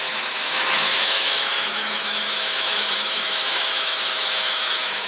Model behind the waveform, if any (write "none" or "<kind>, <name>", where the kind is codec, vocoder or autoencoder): autoencoder, DAC-VAE